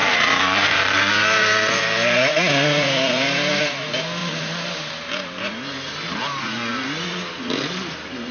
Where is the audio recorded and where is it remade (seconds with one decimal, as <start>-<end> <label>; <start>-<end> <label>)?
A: 0.0-3.6 remade; 3.6-4.2 recorded; 4.2-5.1 remade; 5.1-8.3 recorded